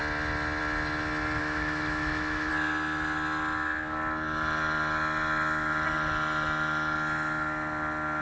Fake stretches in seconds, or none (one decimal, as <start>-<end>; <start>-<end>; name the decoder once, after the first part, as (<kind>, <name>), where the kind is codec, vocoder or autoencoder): 1.4-2.5 (autoencoder, DAC-VAE)